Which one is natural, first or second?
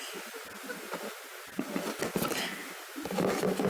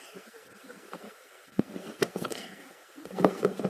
first